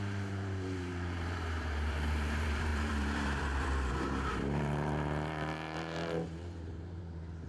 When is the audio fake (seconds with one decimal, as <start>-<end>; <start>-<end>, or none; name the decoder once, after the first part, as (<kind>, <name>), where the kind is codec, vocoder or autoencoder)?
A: 0.0-7.5 (vocoder, BigVGAN v2)